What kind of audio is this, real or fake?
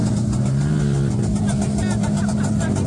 real